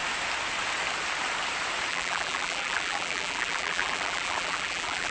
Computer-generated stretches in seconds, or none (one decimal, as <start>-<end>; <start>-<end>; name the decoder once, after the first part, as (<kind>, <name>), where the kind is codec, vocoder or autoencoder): 1.9-5.1 (vocoder, BigVGAN v2)

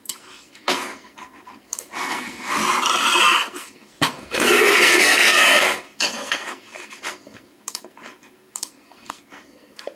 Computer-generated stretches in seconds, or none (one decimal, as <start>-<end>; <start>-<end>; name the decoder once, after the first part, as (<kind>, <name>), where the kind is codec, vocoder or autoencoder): 0.0-2.6 (codec, SNAC); 3.2-9.9

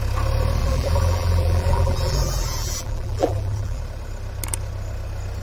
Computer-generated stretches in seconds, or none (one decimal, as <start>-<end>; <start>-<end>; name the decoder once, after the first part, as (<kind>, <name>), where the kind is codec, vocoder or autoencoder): 0.6-3.8 (vocoder, BigVGAN v2)

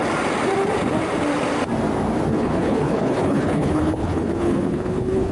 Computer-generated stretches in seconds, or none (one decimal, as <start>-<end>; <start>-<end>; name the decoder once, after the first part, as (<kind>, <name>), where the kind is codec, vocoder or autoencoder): 2.3-5.3 (codec, HILCodec)

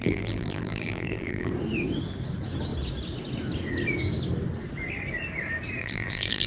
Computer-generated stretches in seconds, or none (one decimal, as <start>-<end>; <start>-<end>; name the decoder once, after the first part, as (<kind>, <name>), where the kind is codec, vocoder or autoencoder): 0.0-1.5 (vocoder, BigVGAN v2); 5.8-6.5

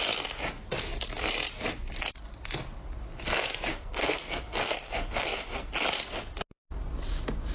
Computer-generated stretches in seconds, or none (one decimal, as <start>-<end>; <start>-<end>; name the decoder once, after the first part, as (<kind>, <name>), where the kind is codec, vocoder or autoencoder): 3.7-5.7 (codec, SNAC)

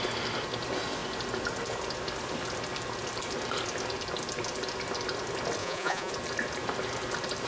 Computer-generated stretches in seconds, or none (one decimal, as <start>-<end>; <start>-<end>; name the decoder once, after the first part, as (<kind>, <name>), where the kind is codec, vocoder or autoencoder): 5.6-6.1 (vocoder, Vocos)

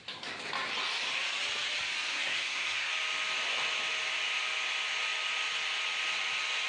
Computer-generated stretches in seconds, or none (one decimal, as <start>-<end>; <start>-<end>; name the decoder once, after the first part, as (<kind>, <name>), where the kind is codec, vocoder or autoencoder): 2.1-2.9 (codec, SNAC)